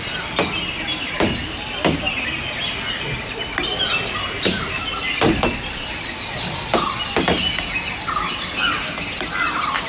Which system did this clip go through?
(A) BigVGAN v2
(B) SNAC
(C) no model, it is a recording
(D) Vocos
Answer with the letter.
C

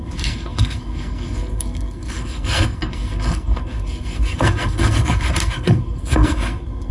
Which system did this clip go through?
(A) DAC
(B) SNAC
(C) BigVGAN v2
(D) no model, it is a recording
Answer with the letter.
B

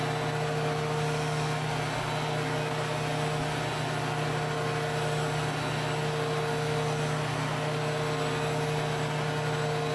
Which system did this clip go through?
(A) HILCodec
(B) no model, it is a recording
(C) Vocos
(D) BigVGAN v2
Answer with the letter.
B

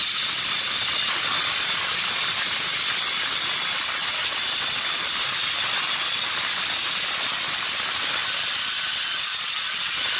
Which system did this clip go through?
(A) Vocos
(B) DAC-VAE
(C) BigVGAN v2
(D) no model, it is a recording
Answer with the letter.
D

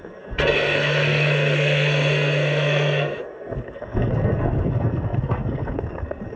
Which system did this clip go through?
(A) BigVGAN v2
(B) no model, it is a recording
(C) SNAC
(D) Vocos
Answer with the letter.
C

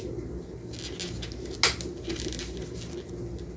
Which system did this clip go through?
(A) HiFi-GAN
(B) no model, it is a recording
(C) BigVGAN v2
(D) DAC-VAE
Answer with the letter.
B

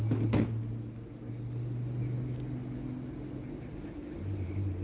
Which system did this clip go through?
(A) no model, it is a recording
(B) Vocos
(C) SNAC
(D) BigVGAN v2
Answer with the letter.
A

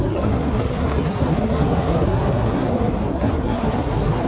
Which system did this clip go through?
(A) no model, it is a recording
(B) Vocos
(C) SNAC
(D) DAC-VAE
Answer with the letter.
C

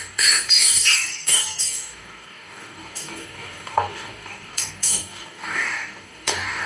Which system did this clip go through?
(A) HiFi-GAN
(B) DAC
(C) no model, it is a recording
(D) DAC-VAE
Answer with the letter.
B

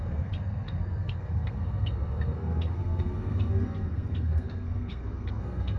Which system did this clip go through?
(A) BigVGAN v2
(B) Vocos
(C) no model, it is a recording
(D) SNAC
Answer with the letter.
D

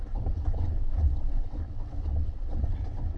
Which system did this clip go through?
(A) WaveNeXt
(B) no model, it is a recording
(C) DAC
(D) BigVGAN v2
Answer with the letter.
A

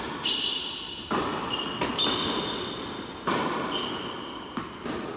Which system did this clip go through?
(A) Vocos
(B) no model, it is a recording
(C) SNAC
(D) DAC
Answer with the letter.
B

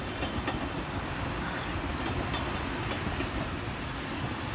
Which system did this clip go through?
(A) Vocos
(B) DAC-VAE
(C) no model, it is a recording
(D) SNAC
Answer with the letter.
C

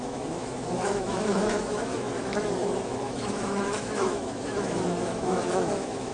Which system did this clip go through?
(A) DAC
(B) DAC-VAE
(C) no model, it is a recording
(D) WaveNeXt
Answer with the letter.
B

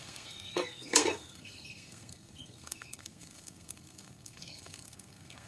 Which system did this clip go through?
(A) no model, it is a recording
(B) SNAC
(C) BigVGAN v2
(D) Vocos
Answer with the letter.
B